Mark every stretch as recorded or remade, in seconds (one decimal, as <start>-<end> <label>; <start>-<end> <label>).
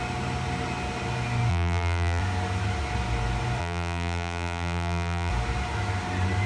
0.0-1.5 recorded; 1.5-2.2 remade; 2.2-3.6 recorded; 3.6-5.3 remade; 5.3-6.5 recorded